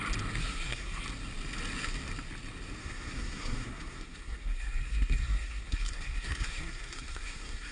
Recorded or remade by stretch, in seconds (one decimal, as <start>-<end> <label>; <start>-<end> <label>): 0.0-0.4 recorded; 0.4-1.0 remade; 1.0-2.8 recorded; 2.8-7.7 remade